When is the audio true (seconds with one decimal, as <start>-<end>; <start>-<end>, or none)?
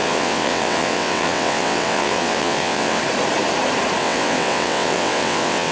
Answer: 3.0-4.0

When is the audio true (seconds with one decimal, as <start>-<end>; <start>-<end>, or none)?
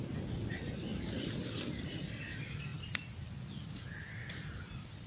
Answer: 0.0-5.1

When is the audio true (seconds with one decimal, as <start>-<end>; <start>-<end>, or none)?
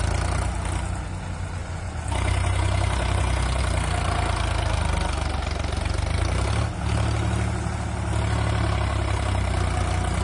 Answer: 0.0-1.6; 3.6-10.2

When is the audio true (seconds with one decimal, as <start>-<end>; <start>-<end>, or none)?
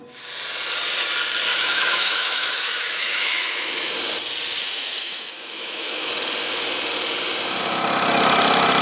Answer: 0.0-1.5; 3.9-4.6; 6.1-8.8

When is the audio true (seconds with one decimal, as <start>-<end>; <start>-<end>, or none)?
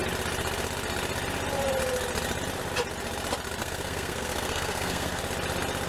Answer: 0.0-3.6; 5.2-5.9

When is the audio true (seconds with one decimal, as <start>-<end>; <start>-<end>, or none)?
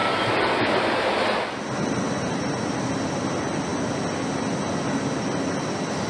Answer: 0.0-6.1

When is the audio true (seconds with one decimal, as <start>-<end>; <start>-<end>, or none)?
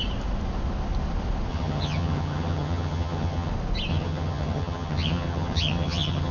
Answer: 0.0-1.5; 3.5-3.9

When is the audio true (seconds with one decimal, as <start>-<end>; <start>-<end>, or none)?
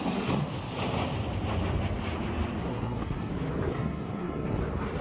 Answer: 0.0-2.6; 3.3-3.7; 4.6-5.0